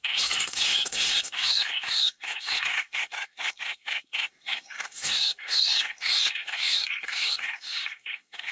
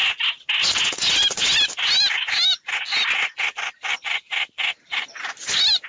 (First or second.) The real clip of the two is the second